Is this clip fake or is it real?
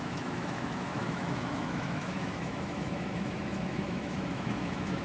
fake